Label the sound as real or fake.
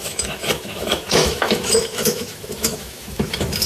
fake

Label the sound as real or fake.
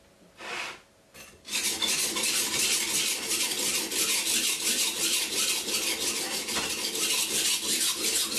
real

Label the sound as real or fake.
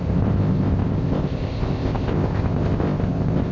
fake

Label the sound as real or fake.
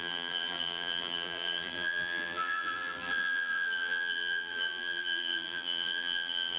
fake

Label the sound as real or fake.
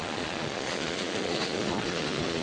fake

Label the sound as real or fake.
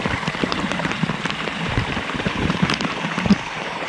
fake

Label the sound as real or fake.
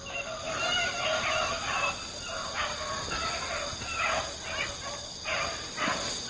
real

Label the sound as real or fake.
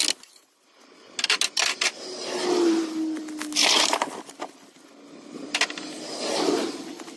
real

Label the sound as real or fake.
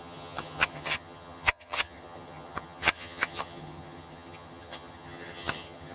fake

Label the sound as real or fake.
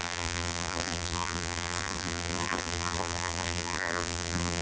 fake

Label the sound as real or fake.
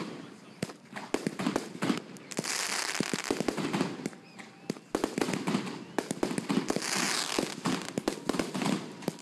real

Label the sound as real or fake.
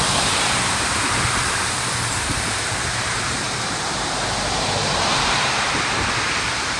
fake